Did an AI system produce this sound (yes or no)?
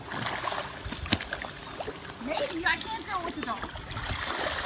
no